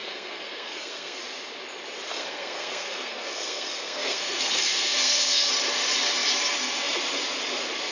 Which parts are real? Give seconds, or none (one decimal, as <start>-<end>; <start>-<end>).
1.2-2.1; 5.5-7.9